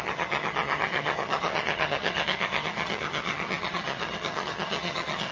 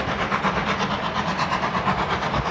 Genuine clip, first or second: second